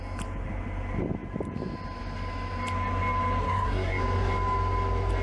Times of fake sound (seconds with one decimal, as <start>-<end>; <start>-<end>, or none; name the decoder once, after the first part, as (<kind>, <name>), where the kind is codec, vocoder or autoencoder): 3.4-4.0 (codec, SNAC)